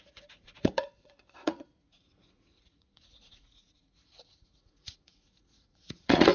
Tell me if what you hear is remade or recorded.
remade